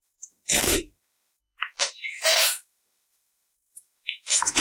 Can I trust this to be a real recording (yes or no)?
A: no